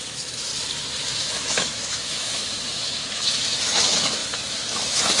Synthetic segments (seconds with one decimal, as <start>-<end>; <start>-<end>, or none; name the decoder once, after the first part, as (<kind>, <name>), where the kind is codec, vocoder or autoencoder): 0.0-0.5 (autoencoder, DAC-VAE); 1.2-5.2